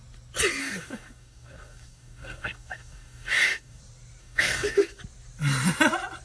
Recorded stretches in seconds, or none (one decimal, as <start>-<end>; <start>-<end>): 0.0-0.6; 3.8-4.2; 5.0-6.2